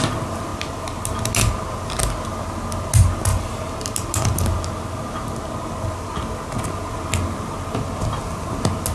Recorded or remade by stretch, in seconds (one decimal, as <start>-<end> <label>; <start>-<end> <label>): 0.0-8.9 recorded